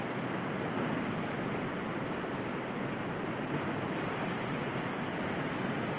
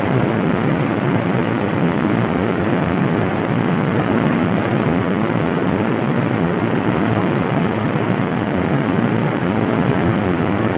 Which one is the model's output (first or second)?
second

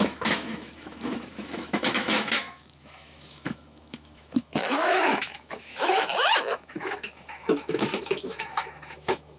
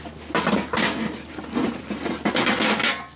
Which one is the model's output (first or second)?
first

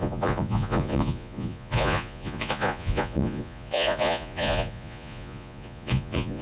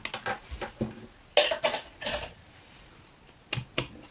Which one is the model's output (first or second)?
first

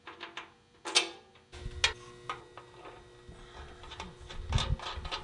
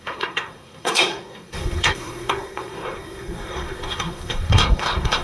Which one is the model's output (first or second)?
second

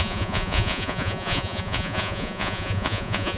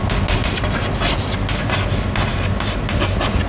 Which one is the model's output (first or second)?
first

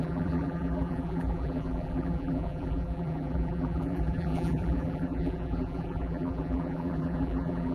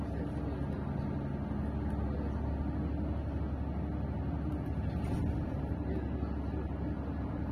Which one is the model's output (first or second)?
first